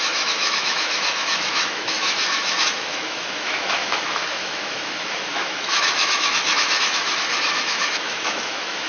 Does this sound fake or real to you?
fake